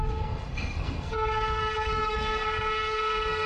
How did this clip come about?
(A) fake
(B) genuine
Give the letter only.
A